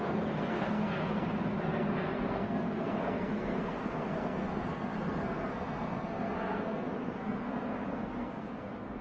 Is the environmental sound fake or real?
fake